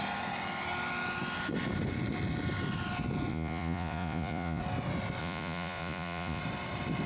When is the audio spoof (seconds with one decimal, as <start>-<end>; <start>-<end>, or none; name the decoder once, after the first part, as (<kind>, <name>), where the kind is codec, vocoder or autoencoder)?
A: 3.3-4.6 (vocoder, Vocos); 5.2-6.4